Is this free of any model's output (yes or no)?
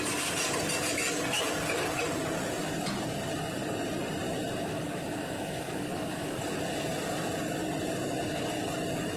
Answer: yes